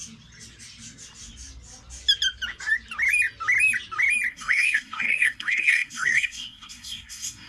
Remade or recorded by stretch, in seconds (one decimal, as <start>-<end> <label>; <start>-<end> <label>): 0.0-4.3 recorded; 4.3-7.5 remade